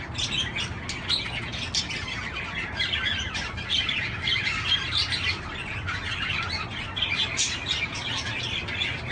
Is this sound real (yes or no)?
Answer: yes